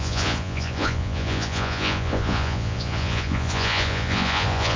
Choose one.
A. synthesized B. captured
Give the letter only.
A